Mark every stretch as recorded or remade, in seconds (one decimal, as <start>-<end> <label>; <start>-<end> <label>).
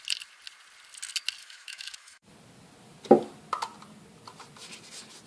0.0-1.4 recorded; 1.4-2.3 remade; 2.3-5.3 recorded